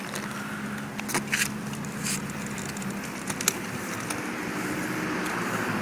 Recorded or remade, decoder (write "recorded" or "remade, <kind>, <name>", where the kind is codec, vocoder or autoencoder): recorded